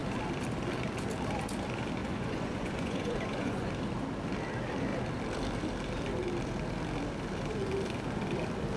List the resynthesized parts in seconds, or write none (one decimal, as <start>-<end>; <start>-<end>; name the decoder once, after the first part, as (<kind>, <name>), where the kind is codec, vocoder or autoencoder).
2.0-3.7 (vocoder, Vocos)